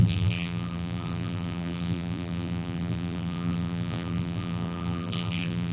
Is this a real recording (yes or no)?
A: no